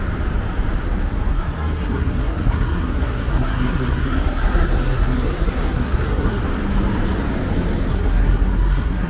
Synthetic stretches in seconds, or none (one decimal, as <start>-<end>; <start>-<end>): 1.3-6.4; 7.9-9.1